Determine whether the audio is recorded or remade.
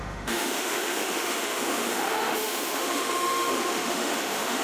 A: remade